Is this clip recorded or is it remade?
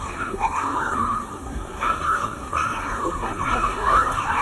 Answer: remade